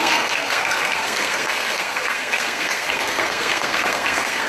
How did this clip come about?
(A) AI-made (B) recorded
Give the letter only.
A